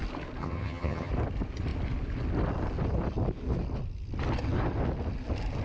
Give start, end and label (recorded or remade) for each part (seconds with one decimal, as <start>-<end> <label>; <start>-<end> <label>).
0.0-0.4 recorded; 0.4-1.1 remade; 1.1-5.6 recorded